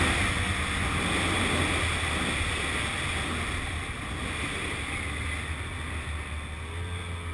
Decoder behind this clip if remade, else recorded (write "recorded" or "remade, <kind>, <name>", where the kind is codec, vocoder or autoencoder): recorded